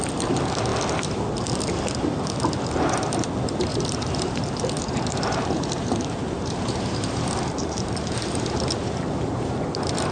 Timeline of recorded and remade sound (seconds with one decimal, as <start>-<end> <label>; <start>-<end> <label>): 0.0-3.7 recorded; 3.7-8.5 remade; 8.5-10.1 recorded